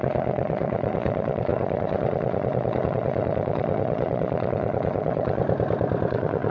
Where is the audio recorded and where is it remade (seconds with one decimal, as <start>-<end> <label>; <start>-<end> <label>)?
0.0-5.4 remade; 5.4-6.1 recorded; 6.1-6.5 remade